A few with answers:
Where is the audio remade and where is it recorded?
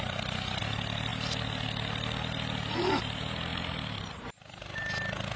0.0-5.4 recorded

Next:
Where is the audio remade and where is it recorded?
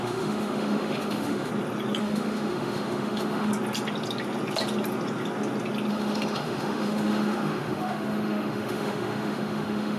0.0-1.5 remade; 1.5-2.0 recorded; 2.0-3.5 remade; 3.5-5.9 recorded; 5.9-10.0 remade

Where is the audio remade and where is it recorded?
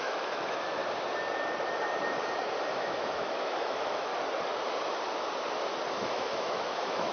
0.0-0.8 remade; 0.8-2.7 recorded; 2.7-4.1 remade; 4.1-5.9 recorded; 5.9-7.1 remade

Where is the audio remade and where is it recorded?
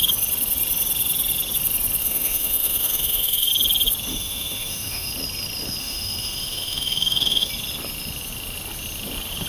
0.0-2.0 recorded; 2.0-3.5 remade; 3.5-4.1 recorded; 4.1-5.1 remade; 5.1-5.8 recorded; 5.8-7.5 remade; 7.5-9.5 recorded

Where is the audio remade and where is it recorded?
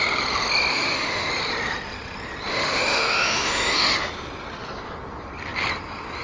0.0-0.7 recorded; 0.7-1.3 remade; 1.3-2.5 recorded; 2.5-4.1 remade; 4.1-6.2 recorded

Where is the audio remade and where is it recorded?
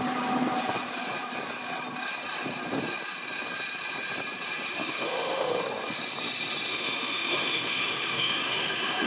0.0-4.8 recorded; 4.8-5.6 remade; 5.6-6.7 recorded; 6.7-9.1 remade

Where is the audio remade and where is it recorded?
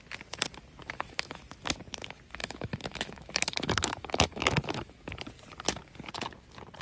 0.0-0.8 recorded; 0.8-1.4 remade; 1.4-2.4 recorded; 2.4-5.2 remade; 5.2-6.8 recorded